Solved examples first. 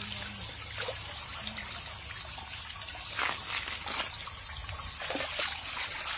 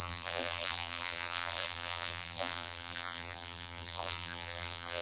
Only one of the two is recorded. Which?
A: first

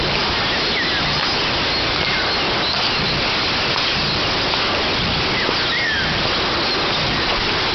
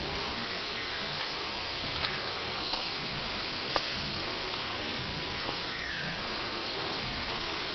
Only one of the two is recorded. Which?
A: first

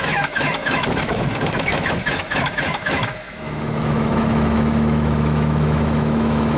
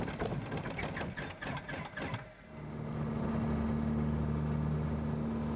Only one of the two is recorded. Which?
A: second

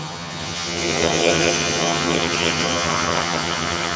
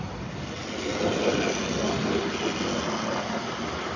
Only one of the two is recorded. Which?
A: second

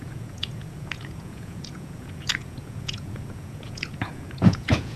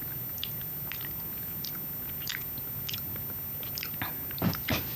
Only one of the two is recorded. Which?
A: second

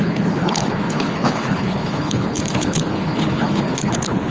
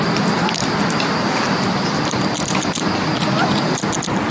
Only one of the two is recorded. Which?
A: second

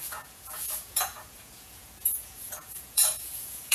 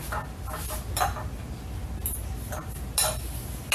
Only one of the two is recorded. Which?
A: second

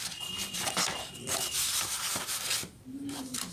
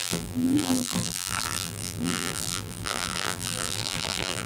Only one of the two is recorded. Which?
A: first